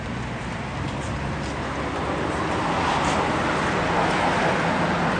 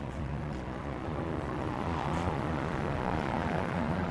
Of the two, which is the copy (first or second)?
second